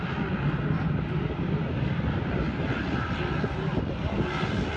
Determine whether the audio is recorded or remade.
recorded